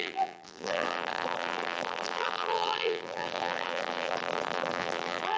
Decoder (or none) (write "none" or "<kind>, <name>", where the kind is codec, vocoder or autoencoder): vocoder, BigVGAN v2